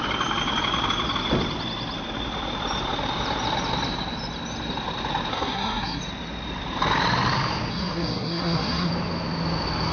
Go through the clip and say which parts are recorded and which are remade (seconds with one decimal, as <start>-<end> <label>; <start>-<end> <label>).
0.0-5.3 recorded; 5.3-6.0 remade; 6.0-7.7 recorded; 7.7-8.9 remade; 8.9-9.9 recorded